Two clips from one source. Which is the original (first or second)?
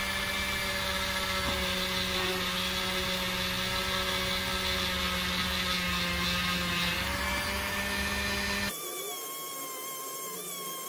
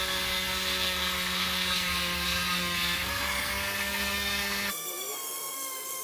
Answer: first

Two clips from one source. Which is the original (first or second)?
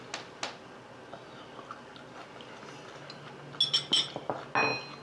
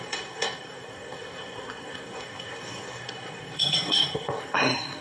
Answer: first